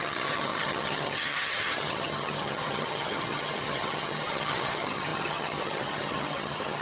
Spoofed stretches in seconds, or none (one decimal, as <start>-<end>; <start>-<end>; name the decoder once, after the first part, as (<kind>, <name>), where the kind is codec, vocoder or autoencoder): 0.0-6.8 (vocoder, HiFi-GAN)